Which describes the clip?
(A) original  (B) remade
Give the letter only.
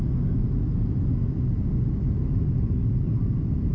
A